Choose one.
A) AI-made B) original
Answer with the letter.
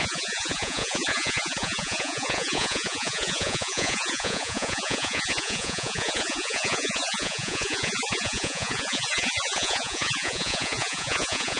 A